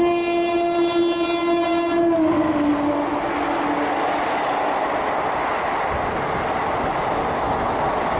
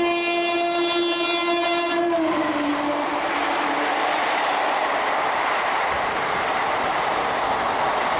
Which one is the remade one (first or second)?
second